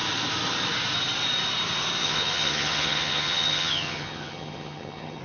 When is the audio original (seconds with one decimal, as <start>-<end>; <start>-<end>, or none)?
0.0-2.0